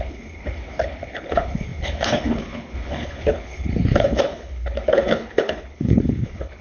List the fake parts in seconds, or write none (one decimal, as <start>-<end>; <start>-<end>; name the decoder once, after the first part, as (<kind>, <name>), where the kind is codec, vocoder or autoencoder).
0.0-6.6 (codec, HILCodec)